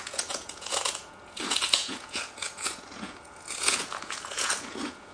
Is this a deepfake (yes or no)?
yes